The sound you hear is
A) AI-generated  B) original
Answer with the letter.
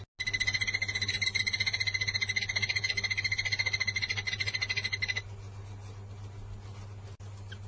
B